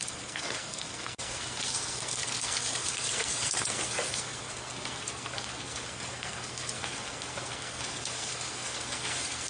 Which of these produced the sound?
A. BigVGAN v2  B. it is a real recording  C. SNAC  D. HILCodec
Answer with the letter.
C